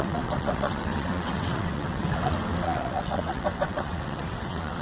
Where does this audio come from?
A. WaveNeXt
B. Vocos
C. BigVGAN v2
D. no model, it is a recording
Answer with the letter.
A